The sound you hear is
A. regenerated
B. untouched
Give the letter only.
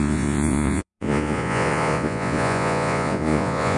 A